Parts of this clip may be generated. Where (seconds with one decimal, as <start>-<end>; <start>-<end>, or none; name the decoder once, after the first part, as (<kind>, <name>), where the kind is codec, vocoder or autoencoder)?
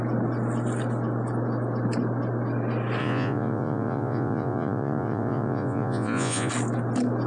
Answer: 3.0-6.5 (vocoder, Vocos)